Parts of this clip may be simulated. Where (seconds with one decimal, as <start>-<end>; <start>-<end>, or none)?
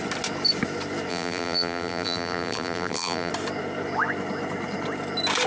1.1-3.3